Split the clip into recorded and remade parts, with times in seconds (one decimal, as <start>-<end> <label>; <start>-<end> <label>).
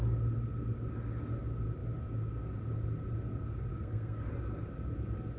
0.0-3.7 recorded; 3.7-4.3 remade; 4.3-5.4 recorded